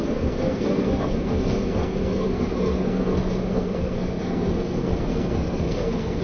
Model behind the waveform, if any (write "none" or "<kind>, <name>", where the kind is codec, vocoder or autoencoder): codec, SNAC